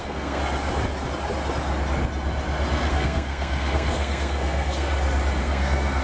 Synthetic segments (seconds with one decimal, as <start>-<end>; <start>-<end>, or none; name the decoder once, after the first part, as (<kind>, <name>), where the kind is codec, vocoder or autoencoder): 0.0-0.4 (codec, SNAC); 2.9-4.9; 5.4-6.0